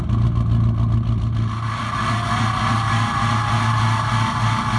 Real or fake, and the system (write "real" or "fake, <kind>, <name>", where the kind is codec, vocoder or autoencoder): real